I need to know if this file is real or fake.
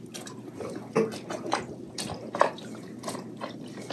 real